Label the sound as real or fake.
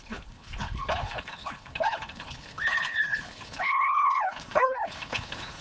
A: fake